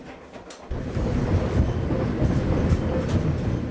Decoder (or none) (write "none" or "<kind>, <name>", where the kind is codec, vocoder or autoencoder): none